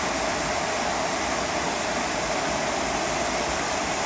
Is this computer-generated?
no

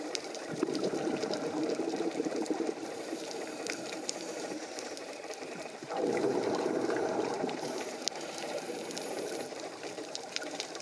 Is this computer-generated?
yes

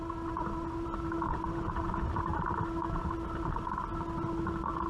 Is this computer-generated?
no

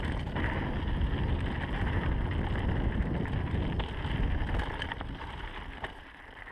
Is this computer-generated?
no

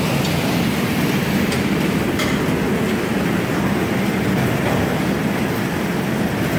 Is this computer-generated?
no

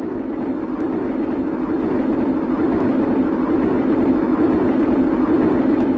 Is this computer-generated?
no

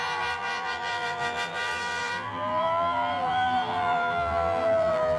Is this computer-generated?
yes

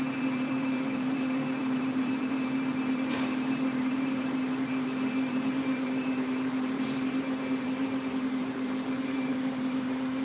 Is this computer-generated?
yes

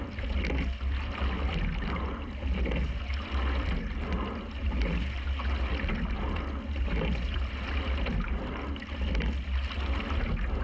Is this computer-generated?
no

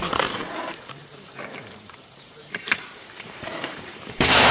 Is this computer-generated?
yes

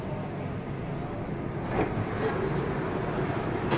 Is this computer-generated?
yes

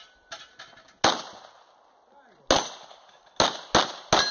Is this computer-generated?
no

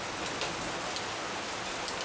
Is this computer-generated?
no